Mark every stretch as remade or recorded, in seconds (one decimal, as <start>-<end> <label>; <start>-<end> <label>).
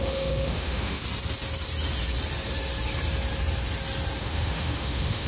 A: 0.0-1.0 remade; 1.0-4.2 recorded; 4.2-5.3 remade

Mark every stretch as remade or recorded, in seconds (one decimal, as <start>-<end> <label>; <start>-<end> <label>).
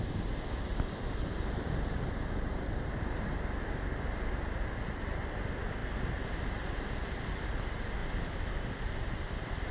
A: 0.0-9.7 recorded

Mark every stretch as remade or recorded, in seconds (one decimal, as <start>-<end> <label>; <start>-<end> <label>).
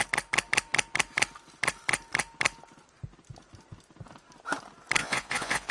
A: 0.0-5.0 recorded; 5.0-5.7 remade